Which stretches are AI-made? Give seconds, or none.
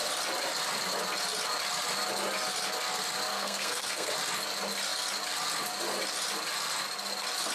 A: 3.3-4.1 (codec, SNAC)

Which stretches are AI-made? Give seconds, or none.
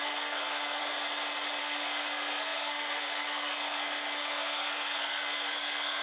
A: 0.0-0.8 (codec, SNAC); 1.6-6.0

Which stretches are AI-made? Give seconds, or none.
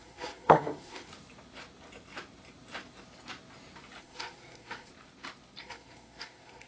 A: 0.0-1.1 (codec, SNAC); 4.0-4.9; 5.6-6.7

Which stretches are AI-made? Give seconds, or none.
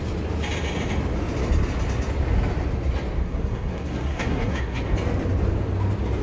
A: 3.2-4.8 (codec, SNAC)